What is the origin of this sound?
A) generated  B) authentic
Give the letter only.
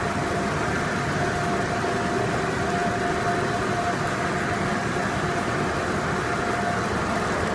B